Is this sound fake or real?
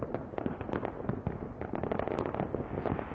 real